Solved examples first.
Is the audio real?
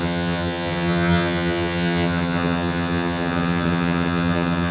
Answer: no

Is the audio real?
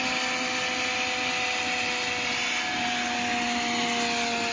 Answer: yes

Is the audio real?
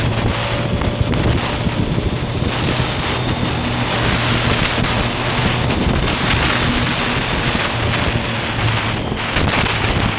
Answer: yes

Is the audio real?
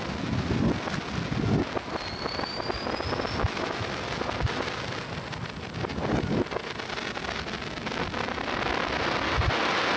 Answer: yes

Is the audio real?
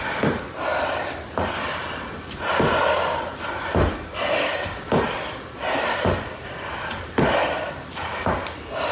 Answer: yes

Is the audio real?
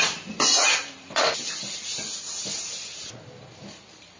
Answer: yes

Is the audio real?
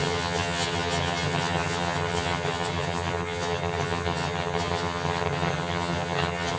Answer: no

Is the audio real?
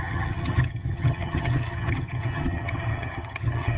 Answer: no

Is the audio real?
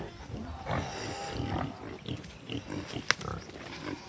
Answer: yes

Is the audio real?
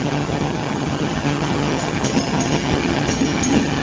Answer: no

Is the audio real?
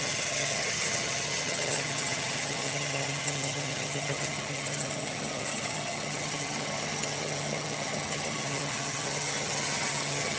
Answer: no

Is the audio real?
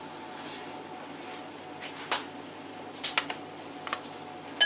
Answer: yes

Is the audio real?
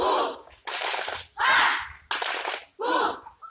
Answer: yes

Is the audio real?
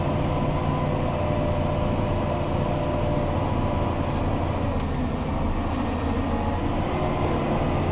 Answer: yes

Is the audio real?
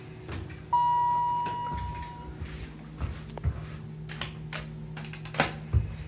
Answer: yes